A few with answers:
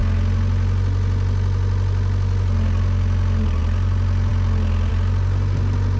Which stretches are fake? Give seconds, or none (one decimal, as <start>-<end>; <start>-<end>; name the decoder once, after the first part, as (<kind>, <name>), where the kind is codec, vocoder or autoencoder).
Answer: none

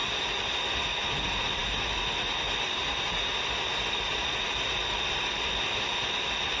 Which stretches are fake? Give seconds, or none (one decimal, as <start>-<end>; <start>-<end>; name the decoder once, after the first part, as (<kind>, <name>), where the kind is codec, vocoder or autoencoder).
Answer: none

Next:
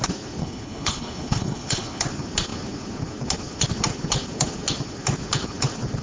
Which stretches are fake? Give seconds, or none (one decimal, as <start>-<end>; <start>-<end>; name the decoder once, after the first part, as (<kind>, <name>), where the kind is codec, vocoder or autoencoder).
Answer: 0.4-2.0 (codec, HILCodec)

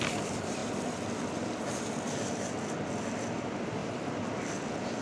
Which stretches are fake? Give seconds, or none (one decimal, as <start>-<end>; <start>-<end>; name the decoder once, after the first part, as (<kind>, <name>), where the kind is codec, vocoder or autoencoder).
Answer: none

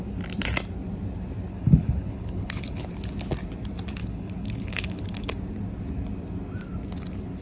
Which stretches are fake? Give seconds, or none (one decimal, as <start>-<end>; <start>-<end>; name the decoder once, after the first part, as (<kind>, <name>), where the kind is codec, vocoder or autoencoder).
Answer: 1.5-2.9 (codec, HILCodec); 4.0-5.3

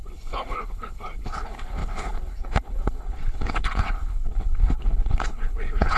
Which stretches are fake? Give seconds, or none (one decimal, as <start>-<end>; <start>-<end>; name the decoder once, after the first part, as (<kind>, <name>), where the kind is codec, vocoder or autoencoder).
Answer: 0.0-6.0 (codec, HILCodec)